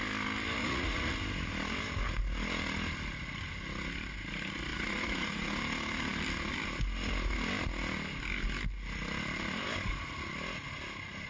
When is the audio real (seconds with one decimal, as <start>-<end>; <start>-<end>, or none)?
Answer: 0.0-0.6; 1.1-4.7; 5.5-11.3